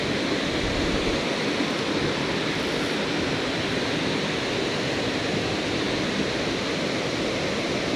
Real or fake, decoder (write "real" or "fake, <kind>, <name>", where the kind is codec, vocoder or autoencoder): real